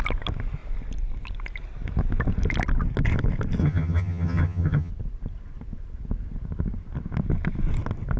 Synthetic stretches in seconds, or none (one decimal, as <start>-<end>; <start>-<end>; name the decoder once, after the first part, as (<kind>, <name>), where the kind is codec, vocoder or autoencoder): 3.6-4.9 (vocoder, HiFi-GAN)